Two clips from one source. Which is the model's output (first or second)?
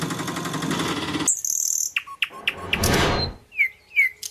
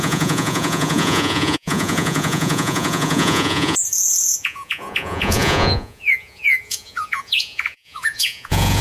second